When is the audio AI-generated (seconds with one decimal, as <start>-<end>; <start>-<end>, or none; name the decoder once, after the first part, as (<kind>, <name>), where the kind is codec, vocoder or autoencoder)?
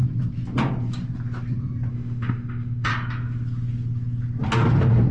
1.9-2.9 (autoencoder, DAC-VAE)